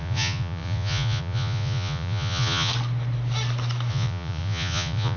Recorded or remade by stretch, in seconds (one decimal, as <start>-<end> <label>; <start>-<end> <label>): 0.0-2.7 remade; 2.7-3.9 recorded; 3.9-5.2 remade